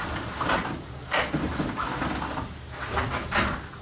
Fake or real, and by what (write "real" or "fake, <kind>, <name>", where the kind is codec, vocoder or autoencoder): real